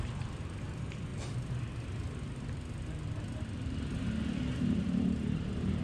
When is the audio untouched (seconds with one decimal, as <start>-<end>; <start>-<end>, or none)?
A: 1.1-4.6